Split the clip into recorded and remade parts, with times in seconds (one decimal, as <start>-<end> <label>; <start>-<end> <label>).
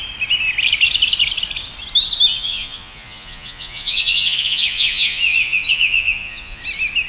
0.0-2.3 recorded; 2.3-6.6 remade; 6.6-7.1 recorded